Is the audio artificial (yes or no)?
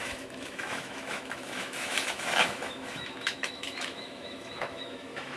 yes